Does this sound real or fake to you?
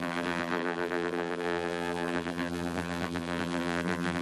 fake